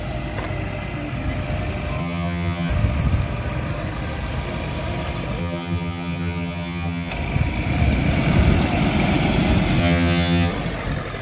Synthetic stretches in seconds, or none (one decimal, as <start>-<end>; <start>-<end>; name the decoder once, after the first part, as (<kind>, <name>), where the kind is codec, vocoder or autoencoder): 2.0-2.7 (vocoder, HiFi-GAN); 5.4-7.1; 9.8-10.5